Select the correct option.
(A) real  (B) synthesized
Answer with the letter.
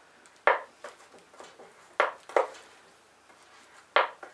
A